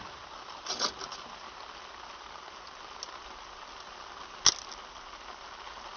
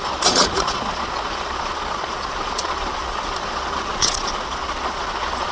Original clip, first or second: first